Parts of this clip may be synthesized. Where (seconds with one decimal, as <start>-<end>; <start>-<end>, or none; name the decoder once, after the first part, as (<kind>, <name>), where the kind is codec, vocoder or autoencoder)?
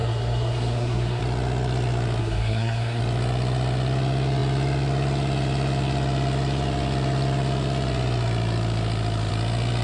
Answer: 0.0-1.2 (codec, SNAC); 2.2-3.0